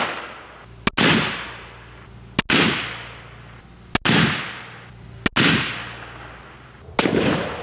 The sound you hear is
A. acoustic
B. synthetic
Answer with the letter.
A